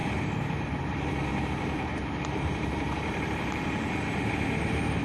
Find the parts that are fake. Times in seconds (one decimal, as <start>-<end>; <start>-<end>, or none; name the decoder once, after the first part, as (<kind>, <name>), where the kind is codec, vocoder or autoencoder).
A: 0.0-0.7 (vocoder, BigVGAN v2); 1.3-4.3